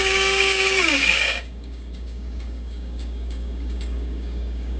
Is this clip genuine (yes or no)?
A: no